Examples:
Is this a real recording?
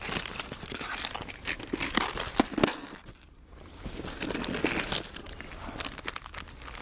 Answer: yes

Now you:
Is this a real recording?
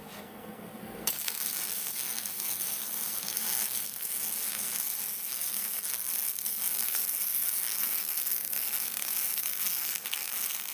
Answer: no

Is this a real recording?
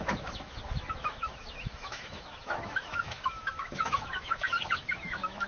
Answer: no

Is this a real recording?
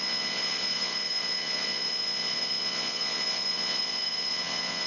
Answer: no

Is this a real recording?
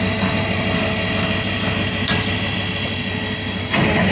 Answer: yes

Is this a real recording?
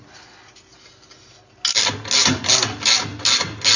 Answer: yes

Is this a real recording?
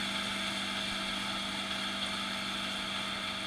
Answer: yes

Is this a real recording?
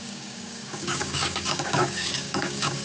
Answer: no